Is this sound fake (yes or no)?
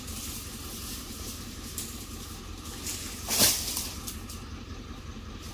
yes